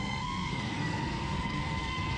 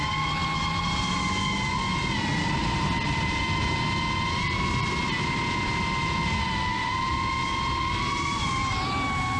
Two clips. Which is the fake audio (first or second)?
first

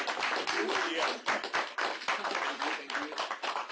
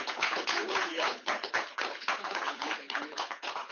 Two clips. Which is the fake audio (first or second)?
second